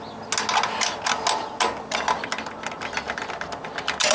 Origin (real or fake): real